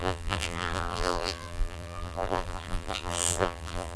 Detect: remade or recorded remade